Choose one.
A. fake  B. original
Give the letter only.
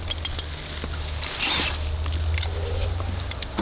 B